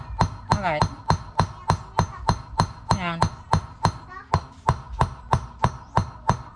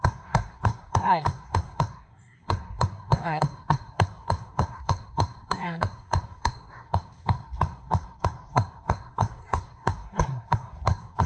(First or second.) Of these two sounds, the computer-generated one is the second